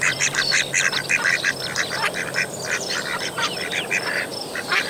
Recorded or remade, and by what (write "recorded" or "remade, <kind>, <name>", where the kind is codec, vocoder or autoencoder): remade, vocoder, BigVGAN v2